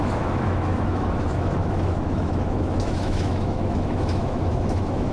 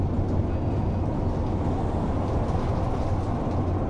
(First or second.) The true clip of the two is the second